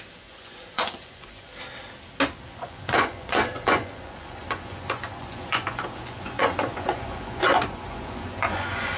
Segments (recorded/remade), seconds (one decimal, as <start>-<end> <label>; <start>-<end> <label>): 0.0-1.5 remade; 1.5-2.5 recorded; 2.5-9.0 remade